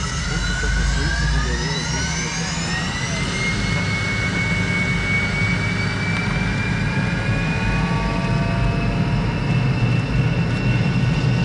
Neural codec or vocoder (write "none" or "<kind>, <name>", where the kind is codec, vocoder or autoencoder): none